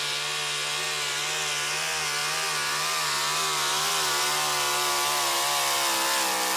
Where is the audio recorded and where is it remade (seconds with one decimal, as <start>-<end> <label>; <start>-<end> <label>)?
0.0-6.6 recorded